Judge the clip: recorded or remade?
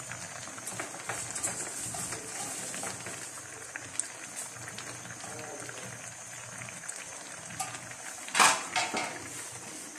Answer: recorded